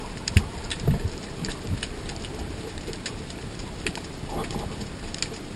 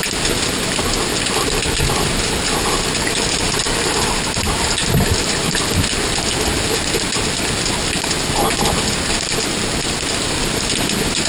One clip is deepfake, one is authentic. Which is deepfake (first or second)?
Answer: first